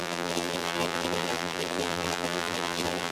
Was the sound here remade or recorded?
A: remade